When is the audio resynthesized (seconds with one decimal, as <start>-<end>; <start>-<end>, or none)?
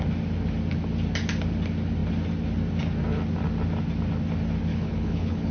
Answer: 4.7-5.5